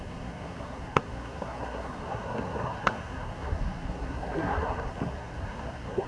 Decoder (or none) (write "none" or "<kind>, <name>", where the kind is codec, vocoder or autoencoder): codec, SNAC